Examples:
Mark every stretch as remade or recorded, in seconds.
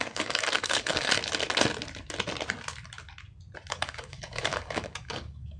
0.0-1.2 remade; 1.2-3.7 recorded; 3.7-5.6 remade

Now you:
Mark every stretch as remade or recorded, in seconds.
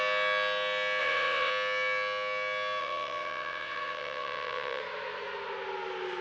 0.0-1.0 recorded; 1.0-1.5 remade; 1.5-2.8 recorded; 2.8-4.8 remade; 4.8-6.2 recorded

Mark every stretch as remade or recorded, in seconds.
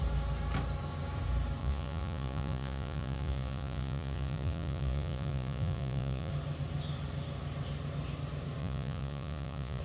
0.0-1.6 recorded; 1.6-6.3 remade; 6.3-8.6 recorded; 8.6-9.8 remade